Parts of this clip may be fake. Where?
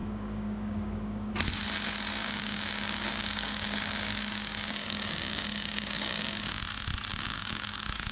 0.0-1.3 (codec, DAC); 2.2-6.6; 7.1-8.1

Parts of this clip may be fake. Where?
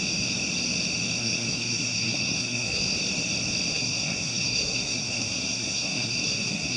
1.2-2.8 (codec, SNAC); 3.7-6.8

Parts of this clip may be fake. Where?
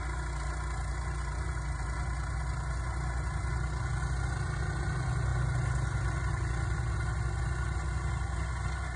none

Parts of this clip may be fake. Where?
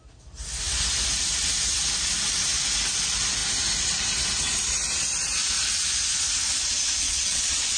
6.5-7.8 (vocoder, Vocos)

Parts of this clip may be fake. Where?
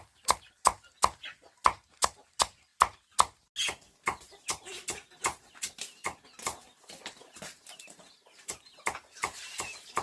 none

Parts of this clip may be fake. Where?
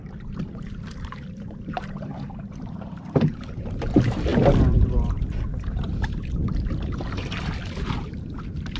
0.0-8.8 (vocoder, BigVGAN v2)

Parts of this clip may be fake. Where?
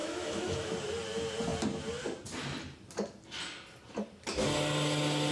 0.0-0.7 (autoencoder, DAC-VAE)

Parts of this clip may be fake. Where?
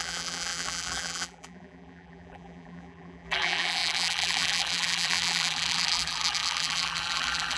0.0-7.6 (vocoder, BigVGAN v2)